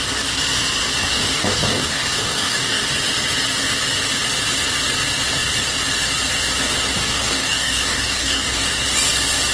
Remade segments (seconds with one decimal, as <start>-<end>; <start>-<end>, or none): 1.1-2.8; 7.0-8.7